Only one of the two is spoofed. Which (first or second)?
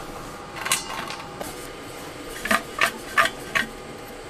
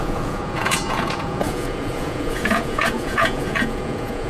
second